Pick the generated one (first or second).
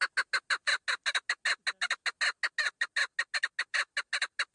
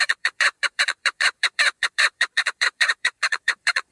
second